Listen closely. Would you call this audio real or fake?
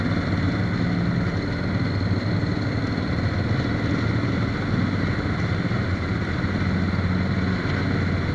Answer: real